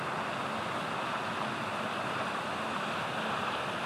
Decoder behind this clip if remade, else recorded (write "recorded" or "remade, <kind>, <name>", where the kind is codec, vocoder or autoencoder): recorded